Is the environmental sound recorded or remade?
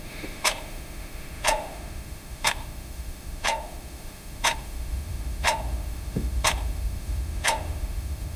remade